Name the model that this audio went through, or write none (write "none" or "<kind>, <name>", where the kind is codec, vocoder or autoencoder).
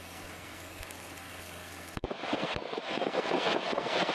codec, SNAC